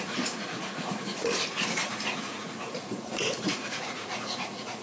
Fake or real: fake